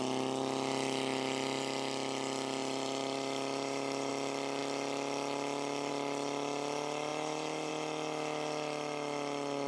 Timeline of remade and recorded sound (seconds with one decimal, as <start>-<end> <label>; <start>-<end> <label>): 0.0-2.6 recorded; 2.6-4.1 remade; 4.1-7.1 recorded; 7.1-7.7 remade; 7.7-9.7 recorded